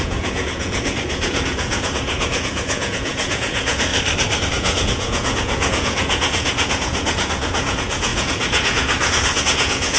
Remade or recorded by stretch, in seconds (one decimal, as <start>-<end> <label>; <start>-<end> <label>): 0.0-3.9 remade; 3.9-4.5 recorded; 4.5-10.0 remade